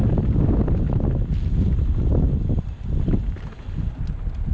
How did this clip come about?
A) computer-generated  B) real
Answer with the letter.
B